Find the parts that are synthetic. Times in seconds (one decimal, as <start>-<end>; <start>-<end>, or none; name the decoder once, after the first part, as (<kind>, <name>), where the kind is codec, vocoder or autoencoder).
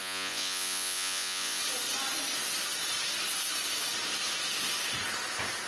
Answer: 0.0-1.6 (vocoder, Vocos)